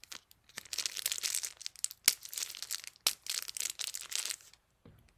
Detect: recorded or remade recorded